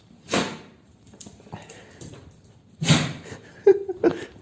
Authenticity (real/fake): fake